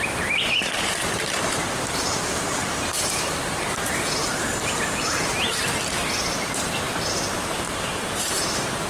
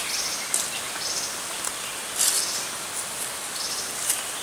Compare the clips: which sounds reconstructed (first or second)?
first